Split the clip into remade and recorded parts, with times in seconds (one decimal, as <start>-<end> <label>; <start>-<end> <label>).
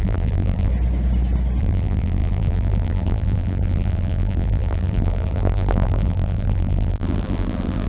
0.0-0.7 remade; 0.7-1.6 recorded; 1.6-7.9 remade